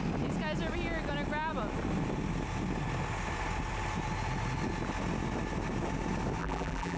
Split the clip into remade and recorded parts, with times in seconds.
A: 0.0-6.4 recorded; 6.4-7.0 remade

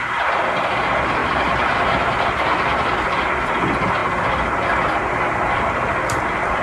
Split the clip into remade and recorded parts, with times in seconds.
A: 0.0-1.2 recorded; 1.2-3.4 remade; 3.4-6.6 recorded

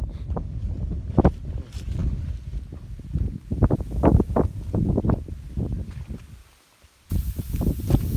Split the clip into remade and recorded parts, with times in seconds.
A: 0.0-6.4 recorded; 6.4-7.4 remade; 7.4-8.2 recorded

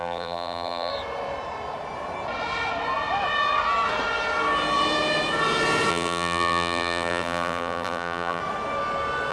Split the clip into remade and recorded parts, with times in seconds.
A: 0.0-0.9 remade; 0.9-5.9 recorded; 5.9-8.4 remade; 8.4-9.3 recorded

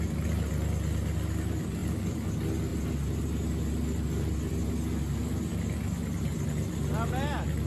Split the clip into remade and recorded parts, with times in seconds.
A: 0.0-7.7 recorded